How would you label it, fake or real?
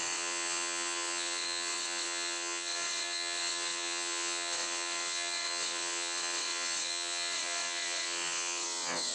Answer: fake